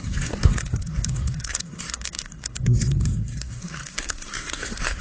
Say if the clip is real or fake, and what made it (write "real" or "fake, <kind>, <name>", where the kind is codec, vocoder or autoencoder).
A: fake, codec, SNAC